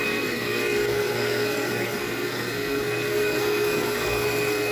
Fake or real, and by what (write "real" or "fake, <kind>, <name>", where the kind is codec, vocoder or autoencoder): fake, codec, SNAC